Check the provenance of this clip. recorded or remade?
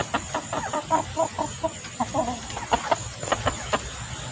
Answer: recorded